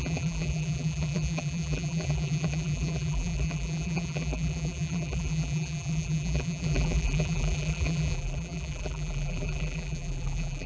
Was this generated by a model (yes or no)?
yes